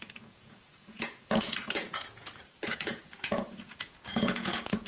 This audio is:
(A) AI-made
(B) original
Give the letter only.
A